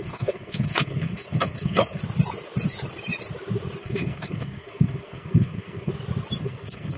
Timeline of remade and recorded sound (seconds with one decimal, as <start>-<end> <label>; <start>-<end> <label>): 0.0-2.0 remade; 2.0-3.8 recorded; 3.8-5.9 remade; 5.9-6.4 recorded; 6.4-7.0 remade